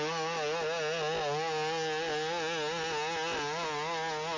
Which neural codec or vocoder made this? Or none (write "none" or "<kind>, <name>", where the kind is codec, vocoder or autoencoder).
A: none